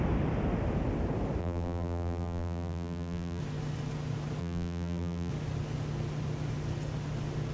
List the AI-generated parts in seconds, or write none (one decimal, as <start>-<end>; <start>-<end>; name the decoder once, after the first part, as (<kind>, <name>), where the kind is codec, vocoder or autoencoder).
1.4-3.4 (vocoder, BigVGAN v2); 4.4-5.3